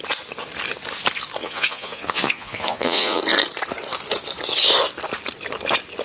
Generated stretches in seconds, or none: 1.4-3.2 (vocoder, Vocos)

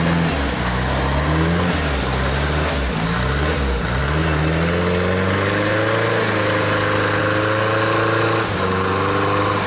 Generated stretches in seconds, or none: none

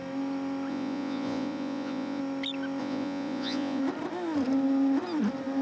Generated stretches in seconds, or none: 0.7-2.2 (vocoder, Vocos); 2.8-3.8

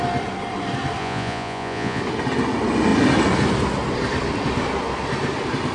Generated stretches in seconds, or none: 1.0-2.0 (vocoder, Vocos)